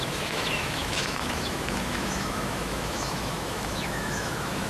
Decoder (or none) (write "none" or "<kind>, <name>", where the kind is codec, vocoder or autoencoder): autoencoder, DAC-VAE